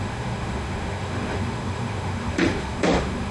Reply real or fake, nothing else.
fake